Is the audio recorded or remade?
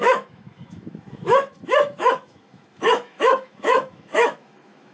remade